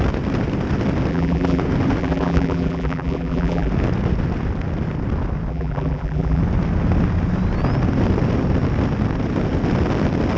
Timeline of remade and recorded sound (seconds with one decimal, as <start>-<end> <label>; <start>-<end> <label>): 0.0-1.1 recorded; 1.1-1.6 remade; 1.6-2.0 recorded; 2.0-3.7 remade; 3.7-5.5 recorded; 5.5-6.4 remade; 6.4-10.4 recorded